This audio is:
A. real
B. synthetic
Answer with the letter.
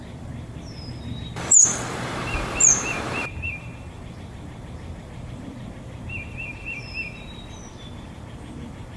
B